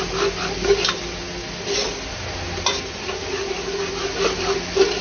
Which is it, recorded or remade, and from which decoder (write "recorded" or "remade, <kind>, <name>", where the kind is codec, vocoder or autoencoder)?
recorded